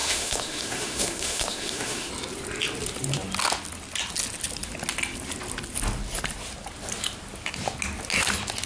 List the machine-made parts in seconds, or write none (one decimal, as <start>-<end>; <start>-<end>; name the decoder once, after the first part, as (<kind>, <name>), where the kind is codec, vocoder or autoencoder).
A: 0.0-2.1 (autoencoder, DAC-VAE)